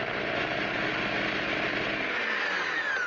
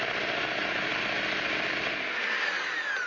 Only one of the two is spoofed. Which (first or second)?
second